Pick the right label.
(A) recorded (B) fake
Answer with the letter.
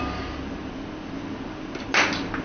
A